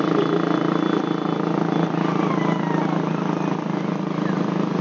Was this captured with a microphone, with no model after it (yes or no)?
yes